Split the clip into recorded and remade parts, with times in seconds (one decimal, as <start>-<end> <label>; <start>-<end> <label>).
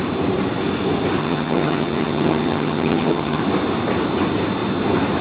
0.0-1.2 recorded; 1.2-3.4 remade; 3.4-5.2 recorded